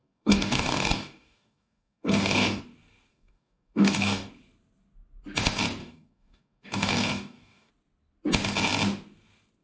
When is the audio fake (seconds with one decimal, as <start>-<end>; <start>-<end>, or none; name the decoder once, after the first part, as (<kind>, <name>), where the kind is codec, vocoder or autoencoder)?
0.0-2.6 (codec, DAC); 3.1-4.3; 5.8-7.7